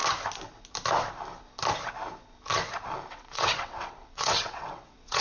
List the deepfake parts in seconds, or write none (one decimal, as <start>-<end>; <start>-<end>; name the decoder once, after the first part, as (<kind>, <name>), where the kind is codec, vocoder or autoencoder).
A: 3.1-5.2 (vocoder, WaveNeXt)